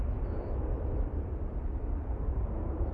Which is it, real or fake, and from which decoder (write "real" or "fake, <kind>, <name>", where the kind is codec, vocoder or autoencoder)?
real